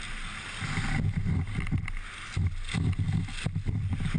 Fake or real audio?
real